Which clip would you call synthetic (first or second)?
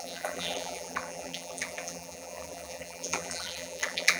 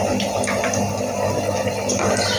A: first